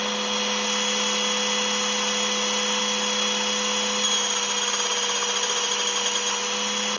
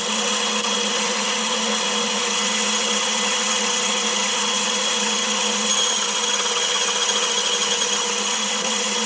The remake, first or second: second